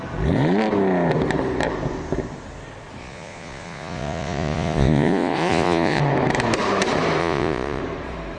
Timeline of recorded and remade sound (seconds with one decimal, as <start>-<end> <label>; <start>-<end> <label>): 0.0-3.0 recorded; 3.0-6.0 remade; 6.0-7.2 recorded; 7.2-7.8 remade; 7.8-8.4 recorded